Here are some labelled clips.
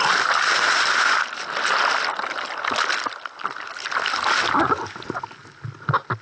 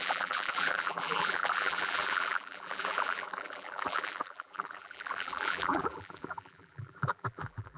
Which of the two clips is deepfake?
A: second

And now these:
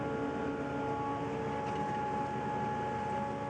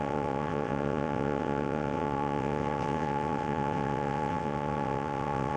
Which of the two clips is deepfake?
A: second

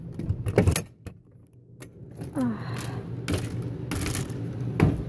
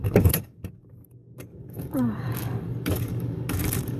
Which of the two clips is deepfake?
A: second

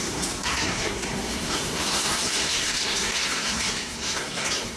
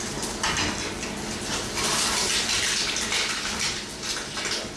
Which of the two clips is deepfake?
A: first